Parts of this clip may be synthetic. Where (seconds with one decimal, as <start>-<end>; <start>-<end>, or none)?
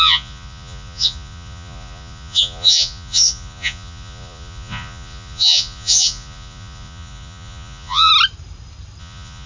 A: 0.0-8.1; 9.0-9.5